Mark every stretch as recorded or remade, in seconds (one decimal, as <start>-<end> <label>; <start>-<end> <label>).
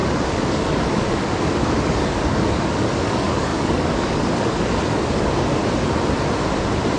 0.0-5.6 remade; 5.6-7.0 recorded